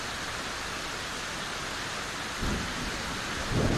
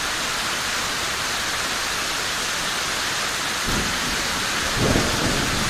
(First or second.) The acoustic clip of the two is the first